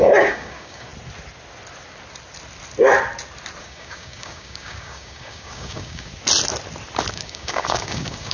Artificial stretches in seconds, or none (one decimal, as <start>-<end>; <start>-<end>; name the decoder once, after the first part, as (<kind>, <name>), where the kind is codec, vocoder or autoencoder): 0.0-0.9 (codec, DAC); 3.6-6.1; 7.1-8.3